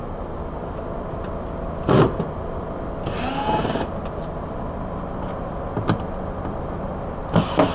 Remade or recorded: recorded